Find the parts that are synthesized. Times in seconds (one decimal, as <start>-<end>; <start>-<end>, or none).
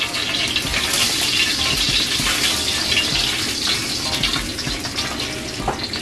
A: none